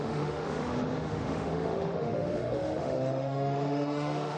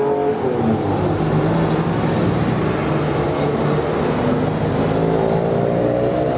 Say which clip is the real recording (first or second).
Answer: second